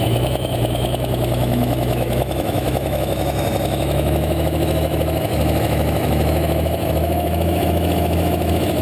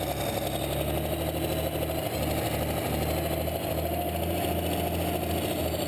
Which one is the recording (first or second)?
second